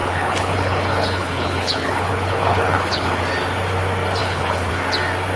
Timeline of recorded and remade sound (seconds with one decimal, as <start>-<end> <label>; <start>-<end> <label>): 0.0-3.2 remade; 3.2-4.2 recorded; 4.2-4.7 remade; 4.7-5.4 recorded